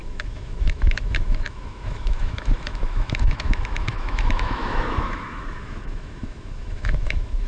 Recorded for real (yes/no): no